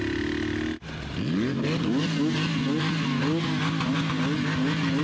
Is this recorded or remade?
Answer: recorded